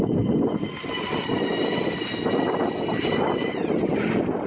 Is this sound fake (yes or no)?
no